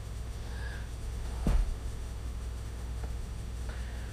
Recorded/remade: remade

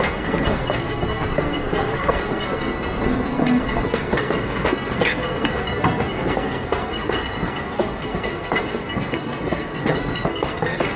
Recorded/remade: remade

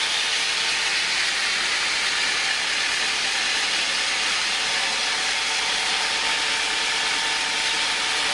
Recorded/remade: recorded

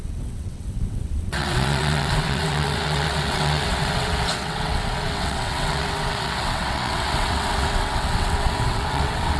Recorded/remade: remade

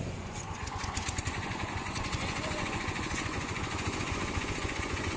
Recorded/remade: remade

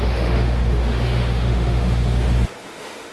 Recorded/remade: remade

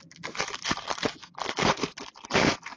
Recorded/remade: recorded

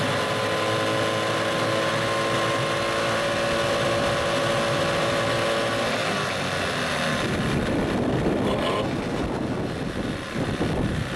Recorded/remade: recorded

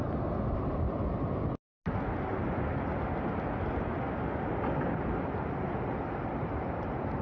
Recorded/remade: recorded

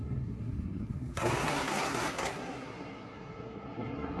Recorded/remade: remade